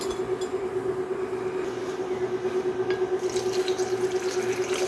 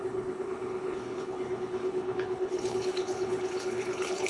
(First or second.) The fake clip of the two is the second